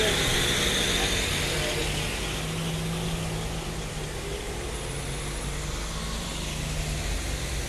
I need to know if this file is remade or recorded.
recorded